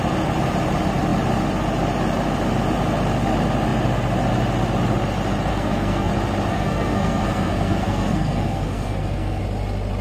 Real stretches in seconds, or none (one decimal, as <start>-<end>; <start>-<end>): 0.0-5.5; 6.1-6.5; 9.4-10.0